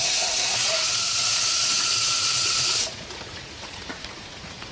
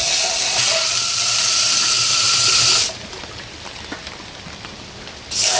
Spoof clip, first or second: first